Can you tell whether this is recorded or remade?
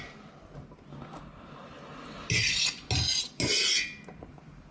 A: recorded